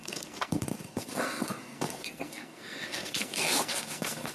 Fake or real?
fake